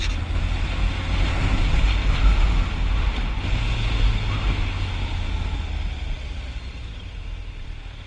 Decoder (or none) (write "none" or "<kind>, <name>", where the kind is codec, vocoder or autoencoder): none